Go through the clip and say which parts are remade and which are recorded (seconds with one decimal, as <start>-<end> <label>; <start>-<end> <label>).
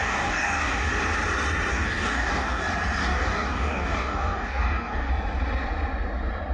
0.0-0.9 remade; 0.9-1.7 recorded; 1.7-2.6 remade; 2.6-3.0 recorded; 3.0-5.1 remade; 5.1-6.5 recorded